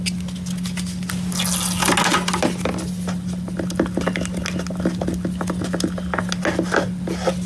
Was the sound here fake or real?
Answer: real